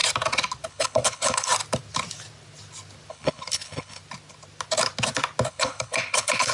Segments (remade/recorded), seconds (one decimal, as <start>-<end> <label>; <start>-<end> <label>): 0.0-0.7 recorded; 0.7-1.5 remade; 1.5-3.1 recorded; 3.1-4.0 remade; 4.0-5.5 recorded; 5.5-6.5 remade